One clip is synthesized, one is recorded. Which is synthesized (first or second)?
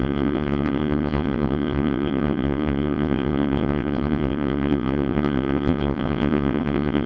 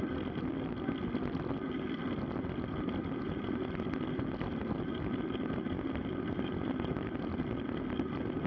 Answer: first